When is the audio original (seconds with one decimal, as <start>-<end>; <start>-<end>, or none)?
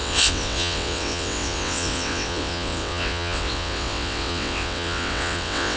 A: none